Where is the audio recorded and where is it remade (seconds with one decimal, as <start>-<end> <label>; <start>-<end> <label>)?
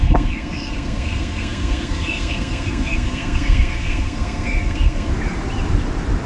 0.0-5.1 remade; 5.1-6.3 recorded